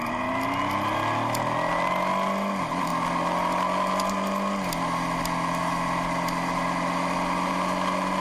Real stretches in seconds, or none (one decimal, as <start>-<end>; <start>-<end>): 0.0-8.2